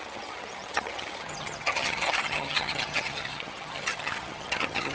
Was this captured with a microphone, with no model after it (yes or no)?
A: no